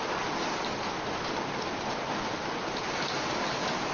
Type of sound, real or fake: real